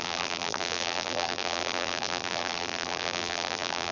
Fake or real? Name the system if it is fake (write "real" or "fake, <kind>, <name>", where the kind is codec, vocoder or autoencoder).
fake, vocoder, BigVGAN v2